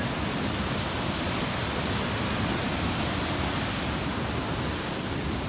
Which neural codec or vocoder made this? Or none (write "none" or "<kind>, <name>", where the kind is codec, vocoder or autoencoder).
none